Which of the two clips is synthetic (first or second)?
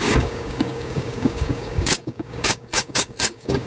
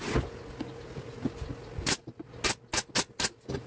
first